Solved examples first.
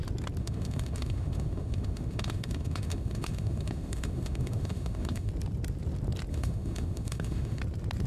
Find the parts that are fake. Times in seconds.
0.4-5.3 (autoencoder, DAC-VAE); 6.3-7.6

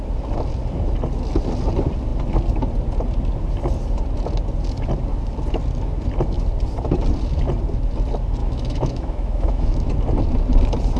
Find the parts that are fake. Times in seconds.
8.4-9.9 (autoencoder, DAC-VAE)

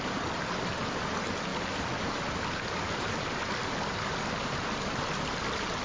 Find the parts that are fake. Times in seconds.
none

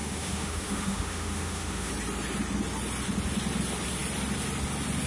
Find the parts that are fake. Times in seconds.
0.0-1.9 (autoencoder, DAC-VAE)

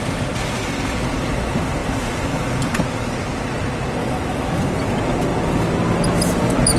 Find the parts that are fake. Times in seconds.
4.0-4.6 (autoencoder, DAC-VAE)

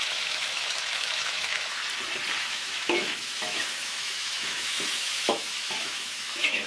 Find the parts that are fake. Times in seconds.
0.0-1.8 (autoencoder, DAC-VAE); 2.4-6.7

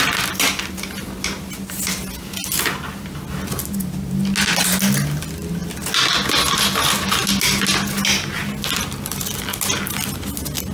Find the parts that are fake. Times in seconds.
none

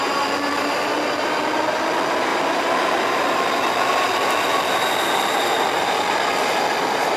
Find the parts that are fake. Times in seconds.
none